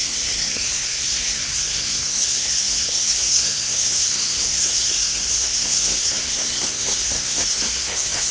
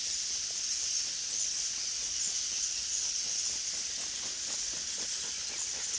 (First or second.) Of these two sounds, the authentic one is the second